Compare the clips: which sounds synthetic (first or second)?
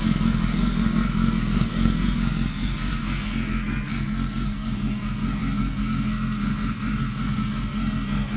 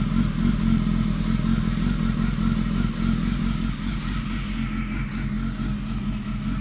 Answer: first